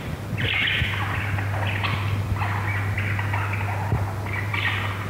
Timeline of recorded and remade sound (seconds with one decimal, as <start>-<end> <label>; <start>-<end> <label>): 0.0-5.1 recorded